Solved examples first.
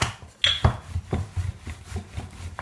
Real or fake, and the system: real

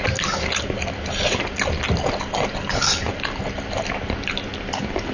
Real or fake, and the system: real